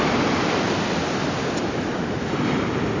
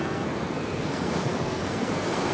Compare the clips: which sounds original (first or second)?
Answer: first